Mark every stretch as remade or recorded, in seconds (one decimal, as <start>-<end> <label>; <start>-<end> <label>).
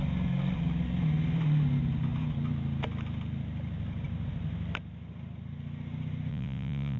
0.0-6.3 recorded; 6.3-7.0 remade